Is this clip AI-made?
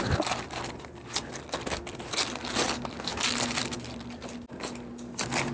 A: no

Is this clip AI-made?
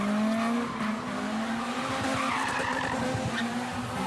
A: no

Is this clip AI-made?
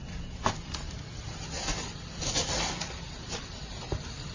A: no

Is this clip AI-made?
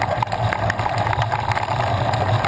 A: no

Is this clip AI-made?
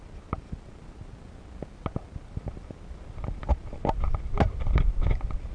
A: no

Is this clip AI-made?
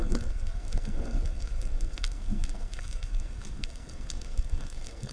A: yes